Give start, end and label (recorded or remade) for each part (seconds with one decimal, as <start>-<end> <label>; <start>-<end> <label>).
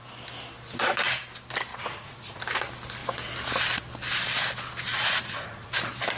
0.0-1.7 recorded; 1.7-2.4 remade; 2.4-4.9 recorded; 4.9-5.7 remade; 5.7-6.2 recorded